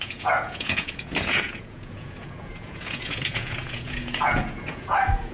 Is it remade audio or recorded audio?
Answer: remade